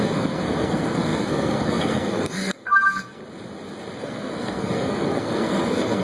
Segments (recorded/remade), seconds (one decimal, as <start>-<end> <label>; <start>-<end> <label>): 0.0-3.2 remade; 3.2-4.0 recorded; 4.0-6.0 remade